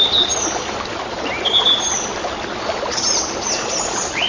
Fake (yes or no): no